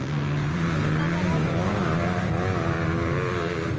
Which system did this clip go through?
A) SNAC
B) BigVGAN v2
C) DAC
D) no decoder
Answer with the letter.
D